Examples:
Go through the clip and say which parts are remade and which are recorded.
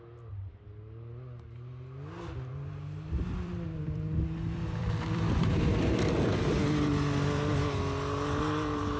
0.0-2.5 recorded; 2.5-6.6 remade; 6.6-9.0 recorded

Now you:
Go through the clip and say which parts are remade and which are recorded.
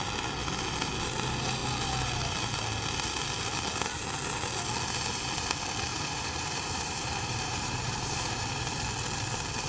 0.0-5.9 recorded; 5.9-8.7 remade; 8.7-9.7 recorded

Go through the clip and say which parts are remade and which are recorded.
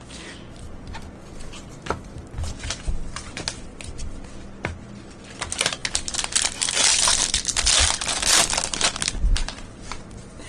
0.0-10.5 recorded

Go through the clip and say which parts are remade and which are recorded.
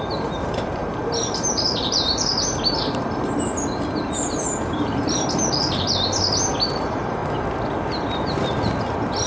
0.0-7.2 remade; 7.2-9.3 recorded